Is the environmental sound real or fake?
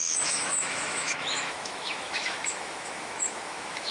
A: fake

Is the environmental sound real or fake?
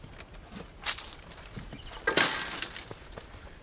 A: real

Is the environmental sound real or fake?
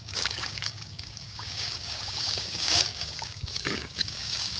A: fake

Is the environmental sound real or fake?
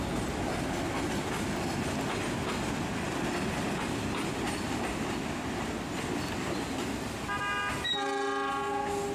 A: real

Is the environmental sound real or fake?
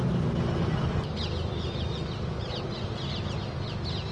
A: real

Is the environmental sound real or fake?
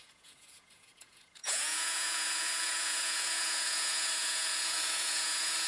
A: fake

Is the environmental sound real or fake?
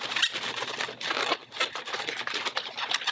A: real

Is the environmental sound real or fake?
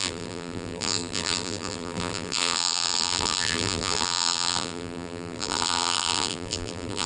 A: fake